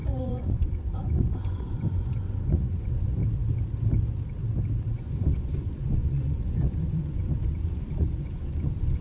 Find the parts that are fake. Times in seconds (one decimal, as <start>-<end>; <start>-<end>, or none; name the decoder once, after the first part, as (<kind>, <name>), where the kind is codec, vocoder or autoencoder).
0.0-3.2 (vocoder, Vocos); 4.9-9.0